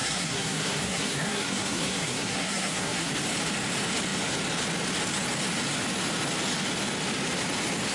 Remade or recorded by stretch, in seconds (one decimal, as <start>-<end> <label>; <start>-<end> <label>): 0.0-3.1 remade; 3.1-7.9 recorded